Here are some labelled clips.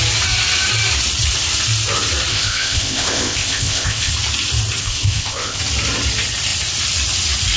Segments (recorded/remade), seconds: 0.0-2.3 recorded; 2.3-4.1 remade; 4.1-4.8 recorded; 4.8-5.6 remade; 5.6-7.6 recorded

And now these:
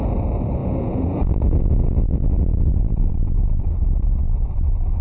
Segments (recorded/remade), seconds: 0.0-0.6 recorded; 0.6-3.1 remade; 3.1-5.0 recorded

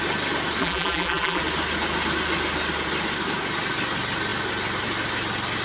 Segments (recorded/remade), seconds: 0.0-0.6 recorded; 0.6-1.4 remade; 1.4-5.6 recorded

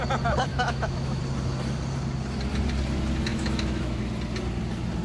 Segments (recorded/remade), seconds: 0.0-0.5 recorded; 0.5-1.2 remade; 1.2-3.3 recorded; 3.3-4.0 remade; 4.0-5.0 recorded

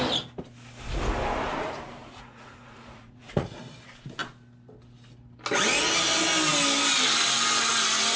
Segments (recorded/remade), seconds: 0.0-2.0 recorded; 2.0-3.6 remade; 3.6-8.2 recorded

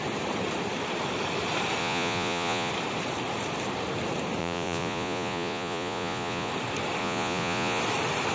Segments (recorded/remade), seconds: 0.0-1.8 recorded; 1.8-2.7 remade; 2.7-4.4 recorded; 4.4-6.5 remade; 6.5-7.0 recorded; 7.0-7.8 remade; 7.8-8.3 recorded

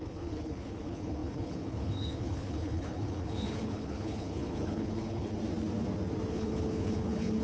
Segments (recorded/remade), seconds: 0.0-5.3 remade; 5.3-6.3 recorded; 6.3-7.4 remade

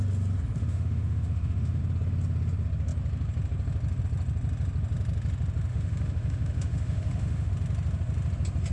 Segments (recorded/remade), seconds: 0.0-0.6 recorded; 0.6-1.8 remade; 1.8-5.7 recorded; 5.7-7.5 remade; 7.5-8.7 recorded